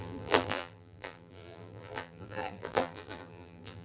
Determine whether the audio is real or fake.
fake